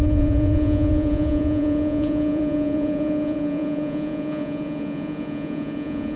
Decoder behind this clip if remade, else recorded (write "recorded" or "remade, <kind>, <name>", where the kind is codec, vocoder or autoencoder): remade, vocoder, Vocos